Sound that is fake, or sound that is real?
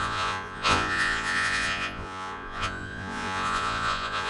fake